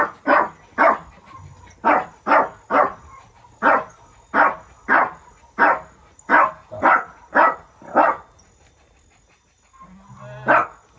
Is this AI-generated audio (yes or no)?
no